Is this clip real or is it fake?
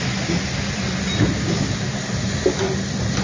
real